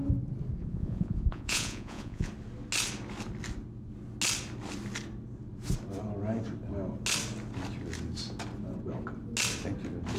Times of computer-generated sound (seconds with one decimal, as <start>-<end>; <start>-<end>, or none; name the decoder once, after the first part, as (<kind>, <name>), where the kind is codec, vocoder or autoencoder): 0.6-2.3 (vocoder, Vocos)